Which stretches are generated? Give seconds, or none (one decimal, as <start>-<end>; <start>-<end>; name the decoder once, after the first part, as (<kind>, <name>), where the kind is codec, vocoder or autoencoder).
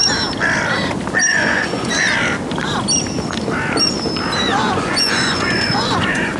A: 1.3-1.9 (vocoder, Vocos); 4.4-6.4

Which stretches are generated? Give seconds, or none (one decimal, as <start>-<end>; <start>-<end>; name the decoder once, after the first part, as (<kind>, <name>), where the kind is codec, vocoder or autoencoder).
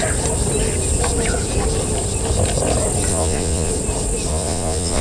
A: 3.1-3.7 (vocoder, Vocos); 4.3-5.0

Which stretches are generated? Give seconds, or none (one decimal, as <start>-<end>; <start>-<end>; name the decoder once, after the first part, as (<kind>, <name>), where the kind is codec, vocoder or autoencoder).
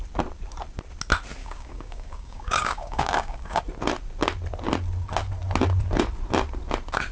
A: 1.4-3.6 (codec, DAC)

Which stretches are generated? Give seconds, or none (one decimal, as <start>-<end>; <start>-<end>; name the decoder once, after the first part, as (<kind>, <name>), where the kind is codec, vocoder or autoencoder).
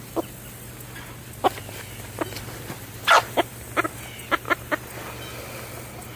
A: none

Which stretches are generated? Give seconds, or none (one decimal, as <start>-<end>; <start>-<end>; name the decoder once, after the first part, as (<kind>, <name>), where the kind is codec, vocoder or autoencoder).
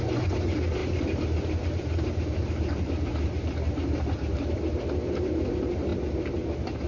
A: 0.0-5.9 (vocoder, BigVGAN v2)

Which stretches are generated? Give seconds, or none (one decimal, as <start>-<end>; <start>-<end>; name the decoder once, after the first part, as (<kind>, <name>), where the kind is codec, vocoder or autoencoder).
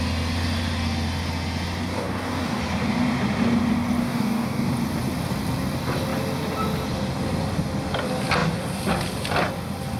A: 1.9-2.6 (codec, DAC); 4.0-4.7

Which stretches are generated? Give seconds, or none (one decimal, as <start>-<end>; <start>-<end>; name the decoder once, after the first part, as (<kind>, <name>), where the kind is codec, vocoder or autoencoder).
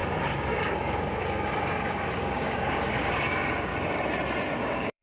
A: 0.0-3.7 (codec, DAC); 4.6-5.0